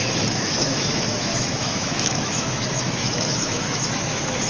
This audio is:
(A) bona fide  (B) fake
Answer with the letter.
B